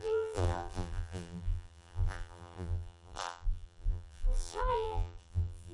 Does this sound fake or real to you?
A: fake